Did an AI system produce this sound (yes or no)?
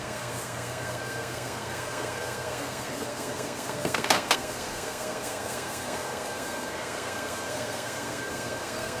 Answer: yes